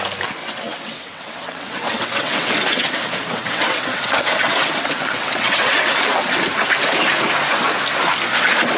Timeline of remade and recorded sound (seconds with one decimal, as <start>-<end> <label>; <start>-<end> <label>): 0.0-0.4 recorded; 0.4-2.9 remade; 2.9-3.4 recorded; 3.4-6.4 remade; 6.4-8.8 recorded